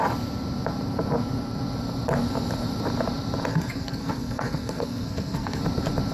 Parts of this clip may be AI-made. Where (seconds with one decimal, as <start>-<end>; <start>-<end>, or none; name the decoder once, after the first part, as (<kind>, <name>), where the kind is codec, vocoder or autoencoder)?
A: 3.5-5.6 (codec, SNAC)